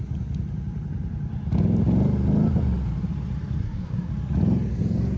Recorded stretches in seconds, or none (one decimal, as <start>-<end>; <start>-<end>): 0.0-3.6; 4.1-5.2